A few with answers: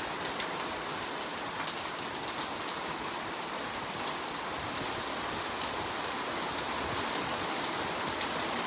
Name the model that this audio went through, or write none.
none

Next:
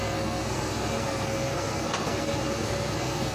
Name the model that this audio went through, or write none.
codec, SNAC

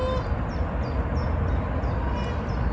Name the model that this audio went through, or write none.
none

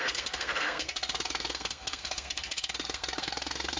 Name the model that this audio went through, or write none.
codec, SNAC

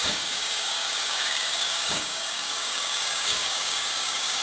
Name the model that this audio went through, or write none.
codec, DAC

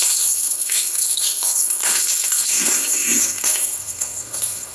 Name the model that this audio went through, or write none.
codec, SNAC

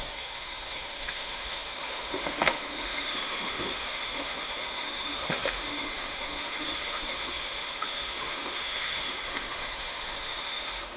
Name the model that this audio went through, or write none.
autoencoder, DAC-VAE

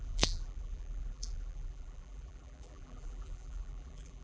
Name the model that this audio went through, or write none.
vocoder, BigVGAN v2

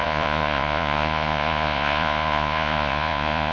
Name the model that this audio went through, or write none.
vocoder, Vocos